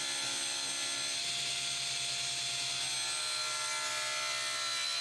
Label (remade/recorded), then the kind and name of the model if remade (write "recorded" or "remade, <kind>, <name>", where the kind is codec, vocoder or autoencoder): recorded